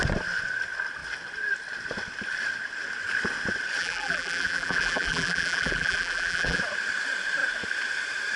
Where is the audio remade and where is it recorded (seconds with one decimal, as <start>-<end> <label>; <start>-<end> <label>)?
0.0-3.8 recorded; 3.8-6.6 remade; 6.6-8.4 recorded